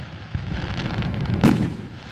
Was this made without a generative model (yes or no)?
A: no